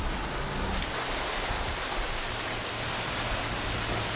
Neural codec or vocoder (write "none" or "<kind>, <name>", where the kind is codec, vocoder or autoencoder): none